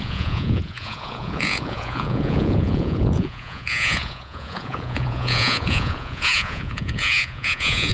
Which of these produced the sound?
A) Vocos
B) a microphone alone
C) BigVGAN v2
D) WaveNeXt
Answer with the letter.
A